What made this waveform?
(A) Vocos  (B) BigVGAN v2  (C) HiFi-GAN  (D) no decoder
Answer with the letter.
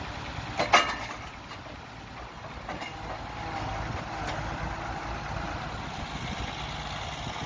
D